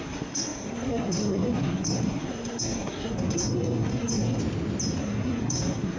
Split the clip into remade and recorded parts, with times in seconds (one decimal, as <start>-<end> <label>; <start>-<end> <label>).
0.0-4.4 remade; 4.4-5.0 recorded; 5.0-6.0 remade